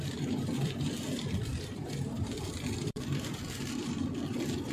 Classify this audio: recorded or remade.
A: remade